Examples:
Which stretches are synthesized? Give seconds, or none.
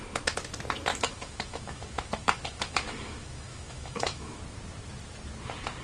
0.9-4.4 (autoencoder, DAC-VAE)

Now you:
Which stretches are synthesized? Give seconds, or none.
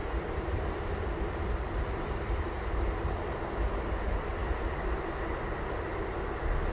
0.0-2.4 (vocoder, BigVGAN v2)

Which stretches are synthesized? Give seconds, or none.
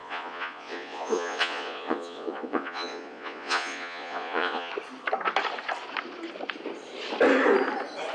0.0-4.7 (vocoder, Vocos)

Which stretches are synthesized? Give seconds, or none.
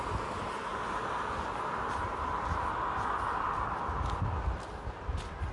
none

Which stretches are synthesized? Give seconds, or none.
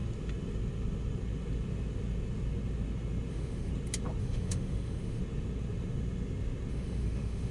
3.3-3.7 (autoencoder, DAC-VAE); 4.2-5.2; 6.7-7.5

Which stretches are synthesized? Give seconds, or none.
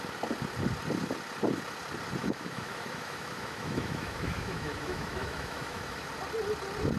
2.2-6.1 (autoencoder, DAC-VAE)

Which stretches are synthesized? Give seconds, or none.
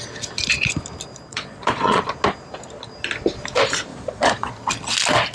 1.3-2.0 (vocoder, Vocos); 3.9-4.5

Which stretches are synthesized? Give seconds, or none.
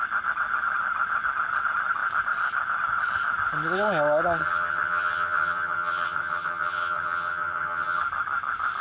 4.4-8.0 (vocoder, HiFi-GAN)